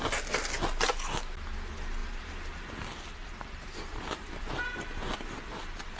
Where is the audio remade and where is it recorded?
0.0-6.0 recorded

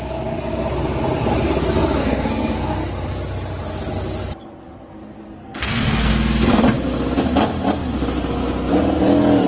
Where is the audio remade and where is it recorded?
0.0-2.0 recorded; 2.0-2.8 remade; 2.8-5.4 recorded; 5.4-6.1 remade; 6.1-9.5 recorded

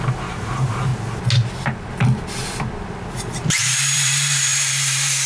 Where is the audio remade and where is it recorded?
0.0-0.9 remade; 0.9-3.2 recorded; 3.2-5.3 remade

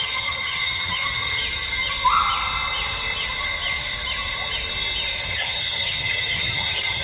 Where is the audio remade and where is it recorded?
0.0-1.4 remade; 1.4-5.2 recorded; 5.2-7.0 remade

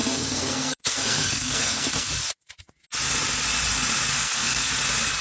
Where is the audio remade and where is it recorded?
0.0-2.1 remade; 2.1-4.2 recorded; 4.2-4.7 remade; 4.7-5.2 recorded

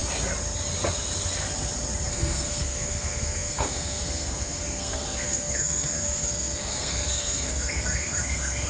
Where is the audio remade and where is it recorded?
0.0-2.1 recorded; 2.1-8.7 remade